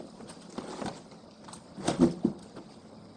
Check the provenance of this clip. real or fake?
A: real